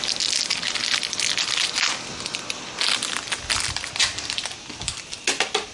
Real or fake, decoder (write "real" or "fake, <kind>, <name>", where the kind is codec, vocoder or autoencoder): real